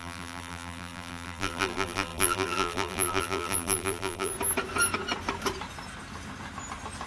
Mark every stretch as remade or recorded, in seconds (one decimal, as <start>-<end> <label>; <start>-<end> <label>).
0.0-4.3 remade; 4.3-7.1 recorded